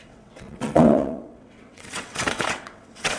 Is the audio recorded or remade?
remade